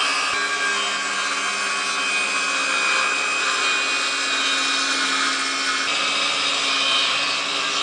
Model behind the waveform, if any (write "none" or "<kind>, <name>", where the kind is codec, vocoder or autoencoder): none